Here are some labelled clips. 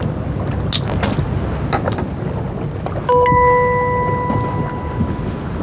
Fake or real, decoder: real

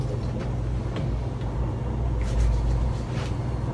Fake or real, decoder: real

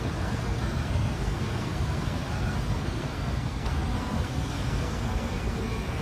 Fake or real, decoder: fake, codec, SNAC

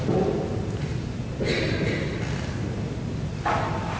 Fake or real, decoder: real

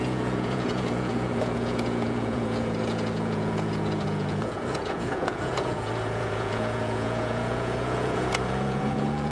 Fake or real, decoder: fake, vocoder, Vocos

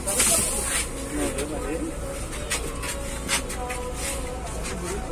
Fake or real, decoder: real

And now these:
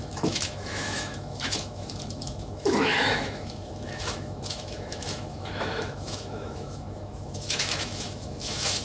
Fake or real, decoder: fake, autoencoder, DAC-VAE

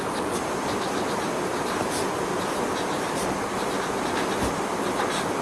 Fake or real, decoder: real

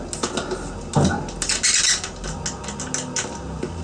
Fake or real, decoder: real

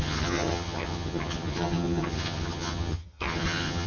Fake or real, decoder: fake, vocoder, HiFi-GAN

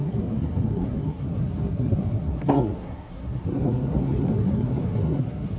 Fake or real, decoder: fake, codec, SNAC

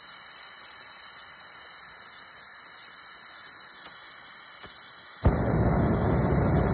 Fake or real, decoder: real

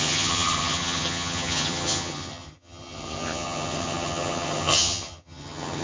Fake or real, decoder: fake, vocoder, HiFi-GAN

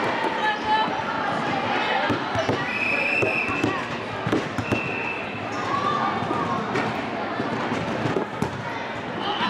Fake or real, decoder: real